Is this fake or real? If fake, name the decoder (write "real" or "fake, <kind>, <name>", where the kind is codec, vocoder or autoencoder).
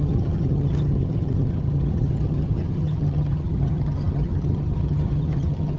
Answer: fake, vocoder, HiFi-GAN